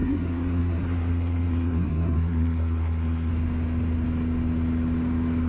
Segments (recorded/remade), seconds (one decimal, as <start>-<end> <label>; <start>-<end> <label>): 0.0-3.3 remade; 3.3-5.5 recorded